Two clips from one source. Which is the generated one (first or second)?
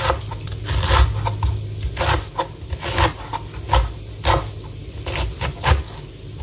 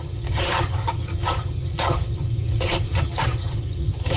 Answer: second